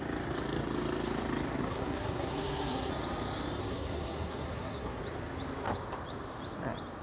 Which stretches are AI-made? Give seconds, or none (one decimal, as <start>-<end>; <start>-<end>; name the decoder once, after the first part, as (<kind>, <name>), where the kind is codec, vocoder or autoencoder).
1.6-2.9 (codec, SNAC); 3.6-5.0